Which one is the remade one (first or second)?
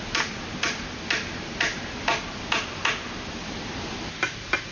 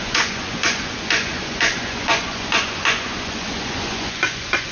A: second